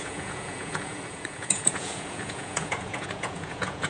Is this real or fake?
fake